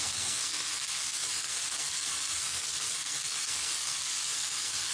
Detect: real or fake fake